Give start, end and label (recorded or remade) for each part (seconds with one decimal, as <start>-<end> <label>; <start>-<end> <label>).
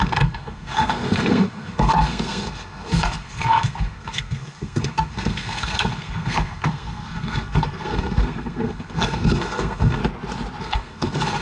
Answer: 0.0-10.0 remade; 10.0-10.6 recorded; 10.6-11.4 remade